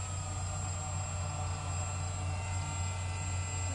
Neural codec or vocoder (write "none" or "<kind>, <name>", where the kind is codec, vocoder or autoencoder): none